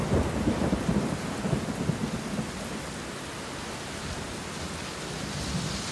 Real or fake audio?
real